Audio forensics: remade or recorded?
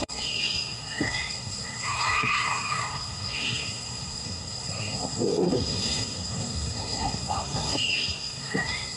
remade